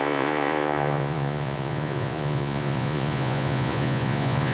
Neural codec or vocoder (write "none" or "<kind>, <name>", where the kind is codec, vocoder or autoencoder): vocoder, Vocos